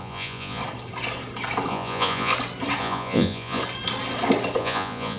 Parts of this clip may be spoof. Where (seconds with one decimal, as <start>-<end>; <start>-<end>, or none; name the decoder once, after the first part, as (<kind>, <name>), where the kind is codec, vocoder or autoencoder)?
0.0-0.6 (vocoder, Vocos); 1.7-2.3; 2.8-3.6; 4.6-5.2

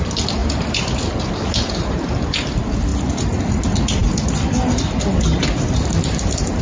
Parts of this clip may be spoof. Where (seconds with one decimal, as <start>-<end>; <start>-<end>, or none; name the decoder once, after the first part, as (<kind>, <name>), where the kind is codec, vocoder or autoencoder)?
none